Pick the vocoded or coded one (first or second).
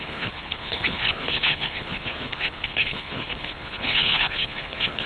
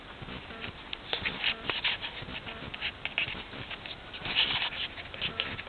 first